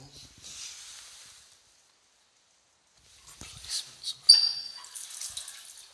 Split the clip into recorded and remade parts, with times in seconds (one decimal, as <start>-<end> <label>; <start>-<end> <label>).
0.0-5.9 recorded